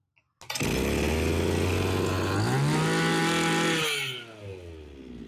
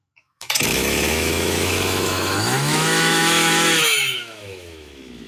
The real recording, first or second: first